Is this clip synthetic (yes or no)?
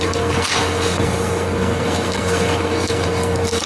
yes